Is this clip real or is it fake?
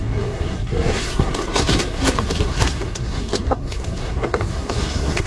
fake